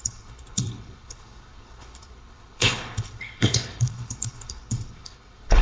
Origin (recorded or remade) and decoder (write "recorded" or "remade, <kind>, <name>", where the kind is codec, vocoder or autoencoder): remade, codec, HILCodec